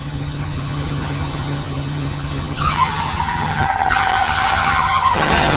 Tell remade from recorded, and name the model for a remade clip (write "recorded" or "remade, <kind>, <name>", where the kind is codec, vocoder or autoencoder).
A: remade, vocoder, HiFi-GAN